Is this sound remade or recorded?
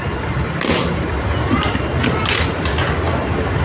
recorded